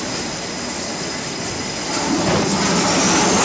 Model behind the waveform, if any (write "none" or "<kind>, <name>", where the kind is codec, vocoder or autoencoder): none